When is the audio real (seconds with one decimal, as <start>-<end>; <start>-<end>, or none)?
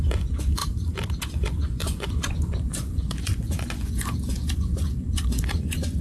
0.6-1.3